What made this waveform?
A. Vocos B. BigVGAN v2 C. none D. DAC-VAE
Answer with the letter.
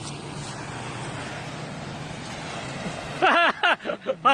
C